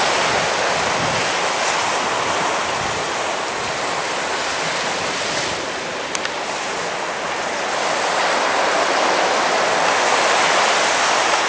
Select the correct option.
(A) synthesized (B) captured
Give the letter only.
B